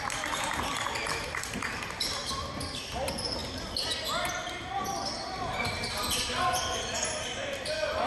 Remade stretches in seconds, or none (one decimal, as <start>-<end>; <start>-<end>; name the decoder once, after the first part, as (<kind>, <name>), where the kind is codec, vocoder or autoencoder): none